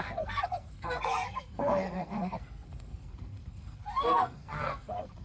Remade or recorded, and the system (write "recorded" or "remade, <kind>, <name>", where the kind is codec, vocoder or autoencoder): remade, codec, SNAC